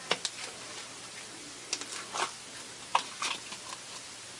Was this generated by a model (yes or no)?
no